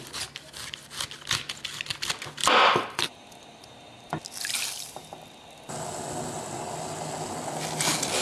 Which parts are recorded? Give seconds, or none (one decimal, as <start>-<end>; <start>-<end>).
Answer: 0.0-8.2